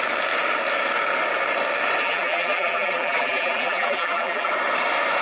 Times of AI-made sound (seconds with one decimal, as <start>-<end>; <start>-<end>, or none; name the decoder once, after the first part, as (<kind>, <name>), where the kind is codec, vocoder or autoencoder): 2.0-4.5 (vocoder, BigVGAN v2)